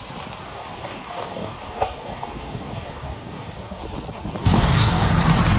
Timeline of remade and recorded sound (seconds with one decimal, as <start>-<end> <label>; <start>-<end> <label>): 0.0-0.4 recorded; 0.4-3.8 remade; 3.8-4.4 recorded; 4.4-5.1 remade; 5.1-5.6 recorded